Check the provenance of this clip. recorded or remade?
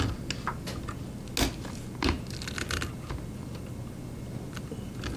recorded